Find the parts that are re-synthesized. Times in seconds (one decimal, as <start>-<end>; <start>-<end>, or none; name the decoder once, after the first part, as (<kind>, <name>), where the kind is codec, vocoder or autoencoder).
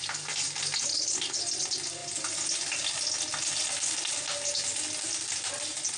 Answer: 0.9-1.4 (codec, HILCodec)